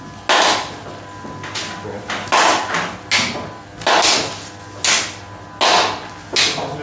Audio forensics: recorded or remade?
recorded